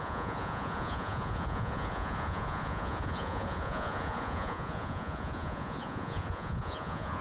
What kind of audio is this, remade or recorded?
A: remade